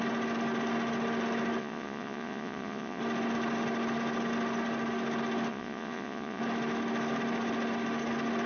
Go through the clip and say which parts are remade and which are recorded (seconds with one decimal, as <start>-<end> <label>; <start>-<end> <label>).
0.0-1.6 recorded; 1.6-3.0 remade; 3.0-5.5 recorded; 5.5-6.4 remade; 6.4-8.5 recorded

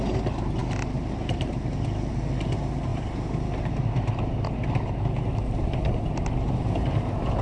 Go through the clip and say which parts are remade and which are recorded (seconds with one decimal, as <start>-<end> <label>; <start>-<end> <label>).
0.0-7.4 recorded